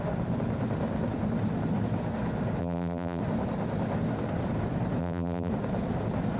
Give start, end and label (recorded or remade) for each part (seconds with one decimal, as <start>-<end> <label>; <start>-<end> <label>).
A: 0.0-2.6 recorded; 2.6-3.2 remade; 3.2-5.0 recorded; 5.0-5.5 remade; 5.5-6.4 recorded